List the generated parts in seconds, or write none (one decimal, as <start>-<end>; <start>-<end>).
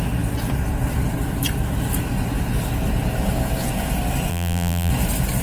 4.3-4.9